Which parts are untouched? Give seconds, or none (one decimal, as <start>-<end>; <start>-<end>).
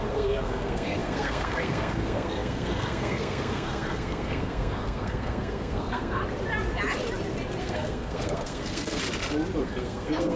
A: 6.2-7.6; 9.0-9.6